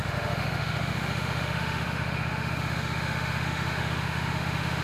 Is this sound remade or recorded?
remade